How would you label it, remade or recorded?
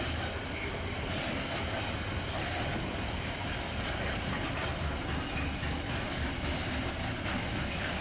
recorded